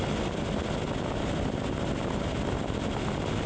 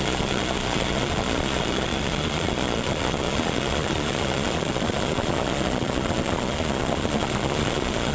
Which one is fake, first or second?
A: second